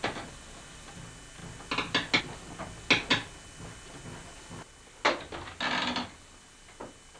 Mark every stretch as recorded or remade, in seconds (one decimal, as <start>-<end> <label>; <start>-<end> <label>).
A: 0.0-7.2 recorded